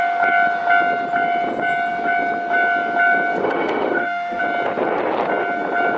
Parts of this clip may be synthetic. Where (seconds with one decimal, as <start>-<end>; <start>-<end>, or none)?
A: 3.4-4.4